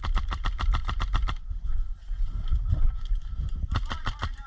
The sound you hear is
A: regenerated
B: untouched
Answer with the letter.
B